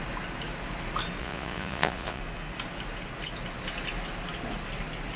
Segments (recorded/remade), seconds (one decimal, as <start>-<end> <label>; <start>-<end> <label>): 0.0-1.2 recorded; 1.2-2.2 remade; 2.2-5.2 recorded